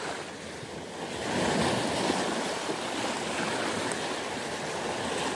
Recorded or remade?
recorded